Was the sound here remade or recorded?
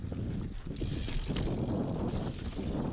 recorded